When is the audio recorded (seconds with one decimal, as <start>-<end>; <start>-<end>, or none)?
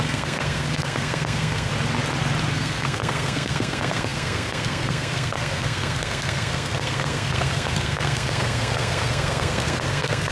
1.7-2.5